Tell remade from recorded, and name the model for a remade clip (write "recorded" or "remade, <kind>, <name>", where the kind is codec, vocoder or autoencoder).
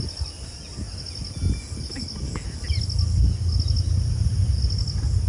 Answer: recorded